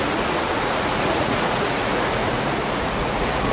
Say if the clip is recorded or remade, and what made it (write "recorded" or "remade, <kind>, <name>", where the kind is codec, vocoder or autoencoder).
remade, vocoder, Vocos